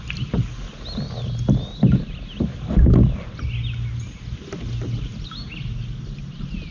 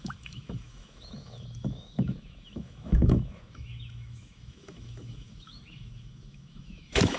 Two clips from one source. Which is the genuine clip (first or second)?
first